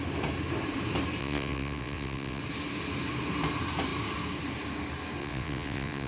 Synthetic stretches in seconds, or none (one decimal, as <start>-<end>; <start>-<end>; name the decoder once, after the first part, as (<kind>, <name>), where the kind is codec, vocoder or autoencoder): 1.2-2.4 (vocoder, WaveNeXt); 5.2-6.1